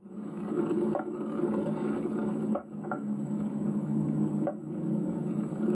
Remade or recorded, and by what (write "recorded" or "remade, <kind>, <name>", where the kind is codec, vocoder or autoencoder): remade, codec, DAC